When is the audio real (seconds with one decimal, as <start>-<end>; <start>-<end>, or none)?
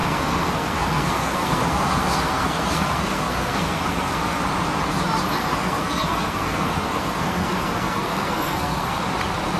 4.4-5.4; 9.0-9.6